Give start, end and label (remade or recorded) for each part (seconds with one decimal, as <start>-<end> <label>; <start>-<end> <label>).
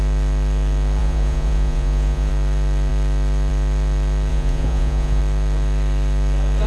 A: 0.0-1.0 recorded; 1.0-2.3 remade; 2.3-4.3 recorded; 4.3-5.2 remade; 5.2-6.7 recorded